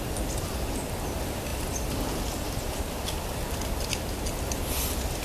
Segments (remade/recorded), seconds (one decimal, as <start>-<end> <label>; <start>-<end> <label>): 0.0-5.2 recorded